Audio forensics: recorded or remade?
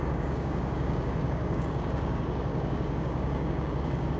remade